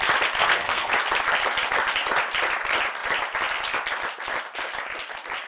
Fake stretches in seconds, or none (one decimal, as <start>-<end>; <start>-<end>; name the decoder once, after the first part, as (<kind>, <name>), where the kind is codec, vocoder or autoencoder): 0.4-0.9 (codec, SNAC)